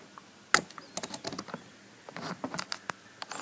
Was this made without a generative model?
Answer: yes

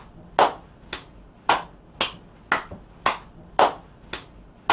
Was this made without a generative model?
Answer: yes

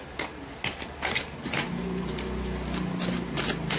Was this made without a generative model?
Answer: yes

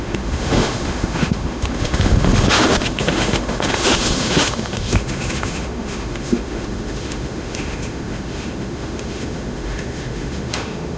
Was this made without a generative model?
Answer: no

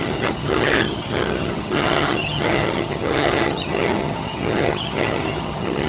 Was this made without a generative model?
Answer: no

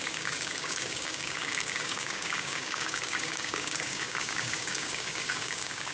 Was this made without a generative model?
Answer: no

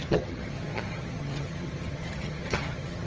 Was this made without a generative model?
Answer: no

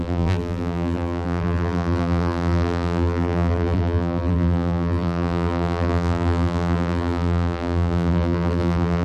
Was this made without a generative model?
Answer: no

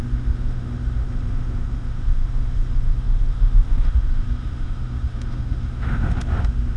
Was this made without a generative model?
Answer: no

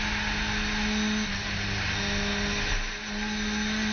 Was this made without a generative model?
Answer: yes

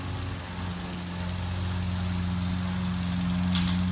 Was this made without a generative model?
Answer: yes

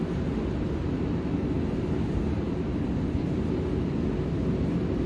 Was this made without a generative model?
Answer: yes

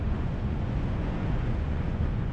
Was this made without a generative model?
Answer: no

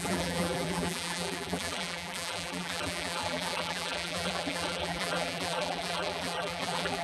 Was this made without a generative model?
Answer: no